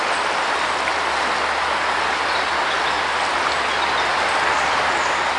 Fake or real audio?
real